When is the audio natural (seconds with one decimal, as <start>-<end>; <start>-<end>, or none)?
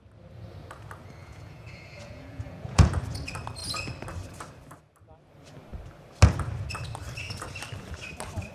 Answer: 0.0-1.2; 3.0-8.5